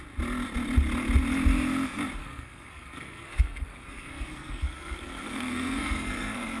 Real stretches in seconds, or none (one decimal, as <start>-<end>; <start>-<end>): 0.0-2.2